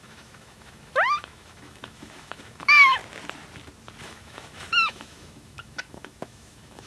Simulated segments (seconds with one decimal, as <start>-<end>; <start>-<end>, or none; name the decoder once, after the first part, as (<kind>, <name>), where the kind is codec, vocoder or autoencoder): 0.0-3.0 (autoencoder, DAC-VAE); 4.0-6.9